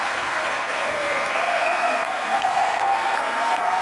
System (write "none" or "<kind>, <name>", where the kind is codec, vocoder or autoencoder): codec, SNAC